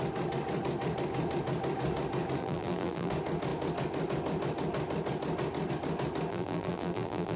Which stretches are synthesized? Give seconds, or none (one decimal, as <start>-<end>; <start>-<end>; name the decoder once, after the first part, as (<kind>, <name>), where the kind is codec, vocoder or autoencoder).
2.4-3.1 (vocoder, BigVGAN v2); 6.3-7.4

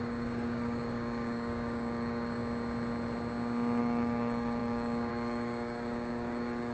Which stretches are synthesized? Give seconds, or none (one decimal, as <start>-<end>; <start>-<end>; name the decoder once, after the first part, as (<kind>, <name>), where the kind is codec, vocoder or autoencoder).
0.0-2.4 (codec, DAC); 3.8-6.7

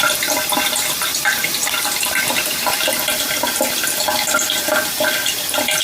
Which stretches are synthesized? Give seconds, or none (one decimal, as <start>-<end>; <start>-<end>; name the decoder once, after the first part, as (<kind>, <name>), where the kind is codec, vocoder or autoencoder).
none

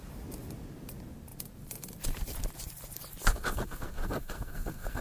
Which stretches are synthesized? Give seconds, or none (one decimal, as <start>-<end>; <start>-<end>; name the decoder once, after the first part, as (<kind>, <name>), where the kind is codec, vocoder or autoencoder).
3.2-5.0 (codec, SNAC)